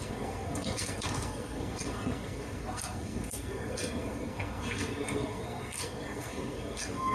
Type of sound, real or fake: fake